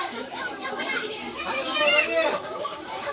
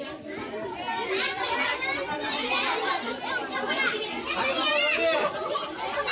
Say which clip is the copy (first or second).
first